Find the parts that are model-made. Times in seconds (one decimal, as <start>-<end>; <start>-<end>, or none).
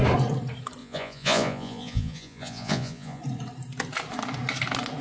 0.8-3.2